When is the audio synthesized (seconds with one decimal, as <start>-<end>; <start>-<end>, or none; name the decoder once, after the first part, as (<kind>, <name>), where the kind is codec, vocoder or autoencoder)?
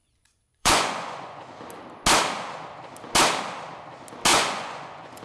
0.0-1.4 (vocoder, Vocos); 4.3-5.2